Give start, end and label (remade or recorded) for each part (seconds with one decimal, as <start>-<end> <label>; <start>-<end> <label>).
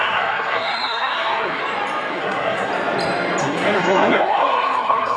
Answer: 0.0-1.6 remade; 1.6-2.1 recorded; 2.1-2.7 remade; 2.7-3.4 recorded; 3.4-5.2 remade